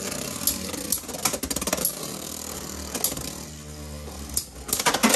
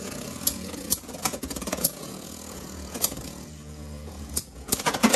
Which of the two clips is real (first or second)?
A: first